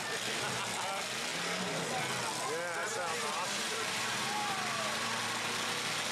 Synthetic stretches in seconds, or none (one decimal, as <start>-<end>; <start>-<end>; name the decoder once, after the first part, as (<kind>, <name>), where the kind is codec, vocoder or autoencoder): 1.3-1.9 (vocoder, BigVGAN v2); 2.8-5.2